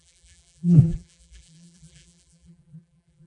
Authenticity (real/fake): fake